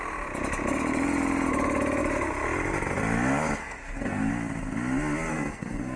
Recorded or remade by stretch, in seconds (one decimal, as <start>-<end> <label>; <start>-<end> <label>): 0.0-3.6 recorded; 3.6-4.3 remade; 4.3-5.3 recorded; 5.3-6.0 remade